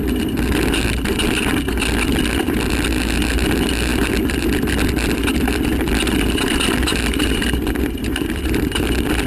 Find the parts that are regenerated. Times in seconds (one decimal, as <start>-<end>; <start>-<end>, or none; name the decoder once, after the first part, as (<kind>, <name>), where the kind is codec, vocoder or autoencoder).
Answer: 3.9-8.6 (vocoder, BigVGAN v2)